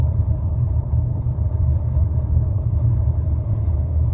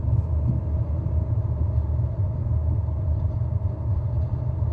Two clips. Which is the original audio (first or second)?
second